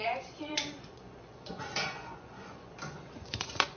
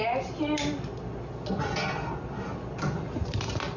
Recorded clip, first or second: second